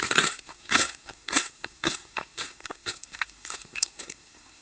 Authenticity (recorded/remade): remade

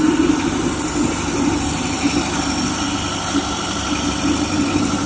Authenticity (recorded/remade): recorded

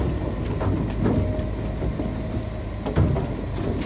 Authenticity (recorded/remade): recorded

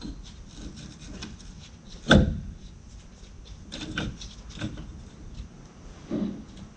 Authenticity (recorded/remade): recorded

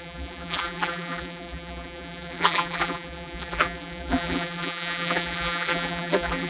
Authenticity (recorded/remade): remade